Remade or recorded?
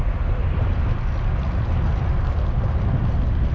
recorded